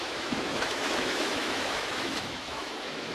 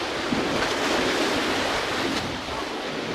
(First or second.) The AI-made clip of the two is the first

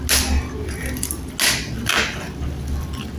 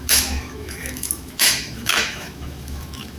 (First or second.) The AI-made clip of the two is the second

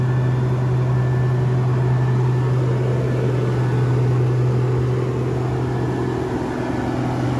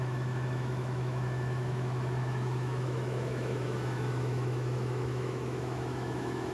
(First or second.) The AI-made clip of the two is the second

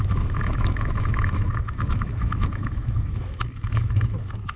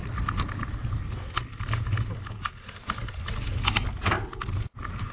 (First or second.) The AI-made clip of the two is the first